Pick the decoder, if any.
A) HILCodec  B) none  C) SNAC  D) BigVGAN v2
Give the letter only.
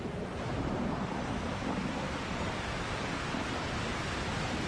B